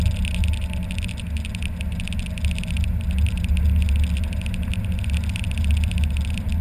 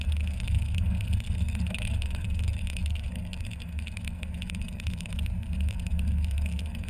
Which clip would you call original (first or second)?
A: first